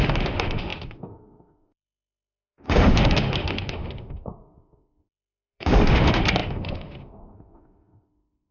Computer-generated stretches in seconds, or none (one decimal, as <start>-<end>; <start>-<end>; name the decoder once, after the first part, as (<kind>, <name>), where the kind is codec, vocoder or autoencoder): 0.0-8.5 (autoencoder, DAC-VAE)